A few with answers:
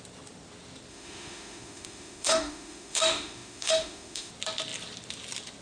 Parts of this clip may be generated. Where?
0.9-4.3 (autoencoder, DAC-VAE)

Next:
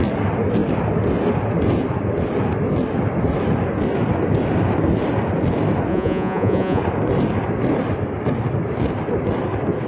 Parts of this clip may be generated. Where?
5.9-6.8 (vocoder, Vocos)

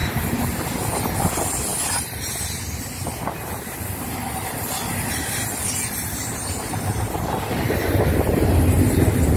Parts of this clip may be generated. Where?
none

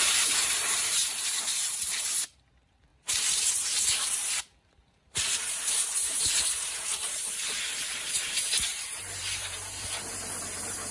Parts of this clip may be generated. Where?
0.0-10.9 (vocoder, BigVGAN v2)

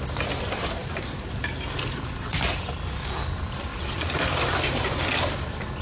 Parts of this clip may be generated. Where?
0.8-1.8 (vocoder, BigVGAN v2); 3.7-4.8

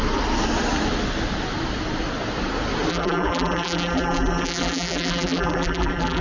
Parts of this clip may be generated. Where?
2.9-6.2 (vocoder, BigVGAN v2)

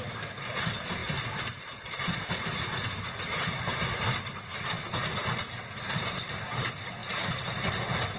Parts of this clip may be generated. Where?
0.0-8.2 (vocoder, BigVGAN v2)

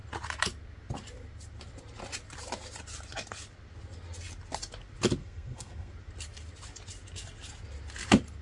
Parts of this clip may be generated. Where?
5.2-5.9 (codec, SNAC)